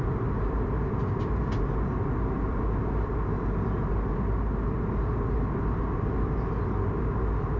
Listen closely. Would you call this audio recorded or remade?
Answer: recorded